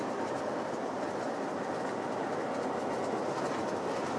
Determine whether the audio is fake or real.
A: real